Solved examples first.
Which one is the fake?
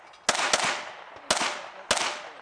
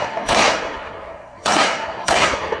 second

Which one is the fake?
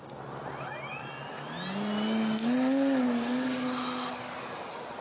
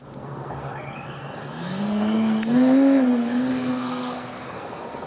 second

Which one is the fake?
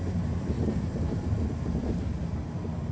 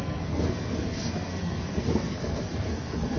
second